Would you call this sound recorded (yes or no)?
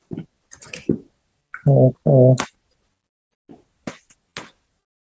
yes